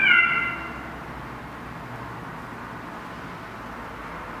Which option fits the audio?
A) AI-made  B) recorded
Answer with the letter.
B